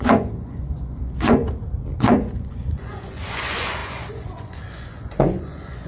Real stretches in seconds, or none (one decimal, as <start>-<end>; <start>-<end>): 1.4-2.0